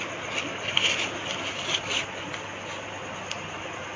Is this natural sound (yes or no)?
yes